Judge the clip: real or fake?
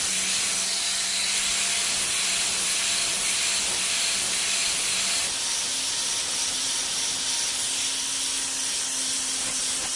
real